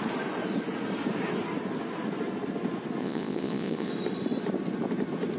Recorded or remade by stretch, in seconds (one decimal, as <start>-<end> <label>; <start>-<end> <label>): 0.0-3.0 recorded; 3.0-3.9 remade; 3.9-5.4 recorded